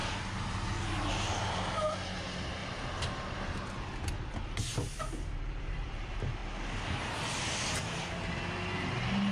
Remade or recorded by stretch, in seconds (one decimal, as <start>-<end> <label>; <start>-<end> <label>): 0.0-1.1 recorded; 1.1-2.6 remade; 2.6-5.4 recorded; 5.4-6.4 remade; 6.4-8.8 recorded; 8.8-9.3 remade

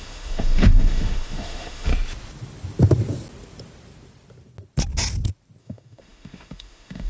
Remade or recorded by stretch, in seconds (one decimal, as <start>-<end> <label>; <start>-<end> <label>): 0.0-1.9 remade; 1.9-5.6 recorded; 5.6-7.1 remade

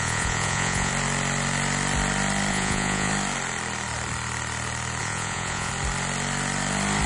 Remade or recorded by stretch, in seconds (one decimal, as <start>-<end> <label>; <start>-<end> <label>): 0.0-0.9 remade; 0.9-2.5 recorded; 2.5-3.1 remade; 3.1-5.0 recorded; 5.0-5.7 remade; 5.7-7.1 recorded

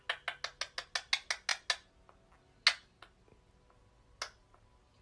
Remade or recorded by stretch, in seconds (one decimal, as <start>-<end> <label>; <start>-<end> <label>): 0.0-5.0 recorded